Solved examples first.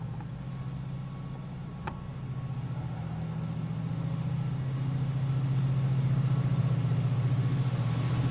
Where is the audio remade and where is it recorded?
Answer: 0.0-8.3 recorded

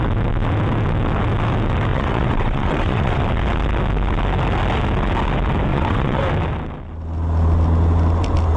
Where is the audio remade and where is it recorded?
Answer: 0.0-1.9 recorded; 1.9-3.2 remade; 3.2-5.7 recorded; 5.7-6.2 remade; 6.2-8.6 recorded

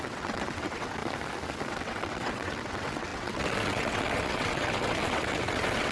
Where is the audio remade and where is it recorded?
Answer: 0.0-1.0 remade; 1.0-1.7 recorded; 1.7-5.9 remade

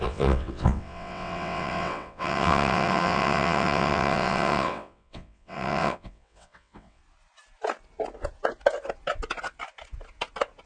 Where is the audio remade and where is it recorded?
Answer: 0.0-7.0 remade; 7.0-10.7 recorded